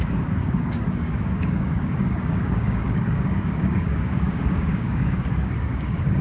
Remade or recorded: remade